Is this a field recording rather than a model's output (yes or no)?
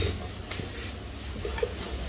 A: yes